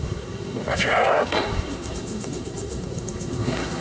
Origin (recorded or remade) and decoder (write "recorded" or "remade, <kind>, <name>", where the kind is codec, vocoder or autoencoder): remade, codec, SNAC